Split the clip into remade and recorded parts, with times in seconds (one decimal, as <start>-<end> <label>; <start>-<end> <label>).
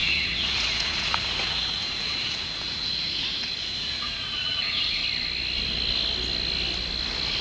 0.0-5.0 remade; 5.0-7.4 recorded